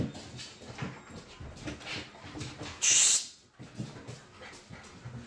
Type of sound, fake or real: real